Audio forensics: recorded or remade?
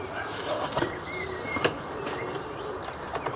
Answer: recorded